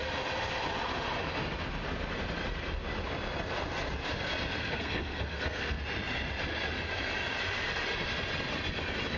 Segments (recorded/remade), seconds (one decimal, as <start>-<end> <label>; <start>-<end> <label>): 0.0-4.6 recorded; 4.6-5.8 remade; 5.8-9.2 recorded